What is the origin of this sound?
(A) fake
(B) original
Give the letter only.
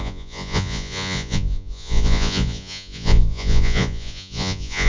A